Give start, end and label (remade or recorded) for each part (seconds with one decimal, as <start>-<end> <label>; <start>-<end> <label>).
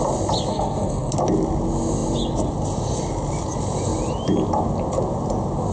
0.0-0.5 recorded; 0.5-1.1 remade; 1.1-5.7 recorded